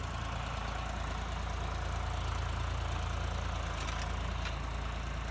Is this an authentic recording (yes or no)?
yes